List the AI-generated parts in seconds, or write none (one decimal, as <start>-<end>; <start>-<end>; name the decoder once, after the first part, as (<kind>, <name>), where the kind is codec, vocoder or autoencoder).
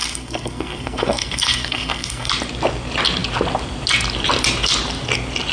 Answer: 0.0-2.3 (codec, SNAC)